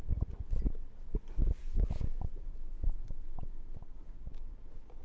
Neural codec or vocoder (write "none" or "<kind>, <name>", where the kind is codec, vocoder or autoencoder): none